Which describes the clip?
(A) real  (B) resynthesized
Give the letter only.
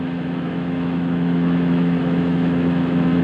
B